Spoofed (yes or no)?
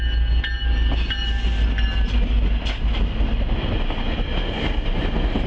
no